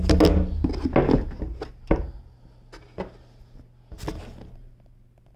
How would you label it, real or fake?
real